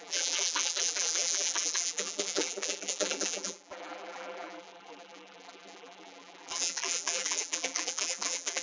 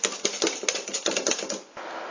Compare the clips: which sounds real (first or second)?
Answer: second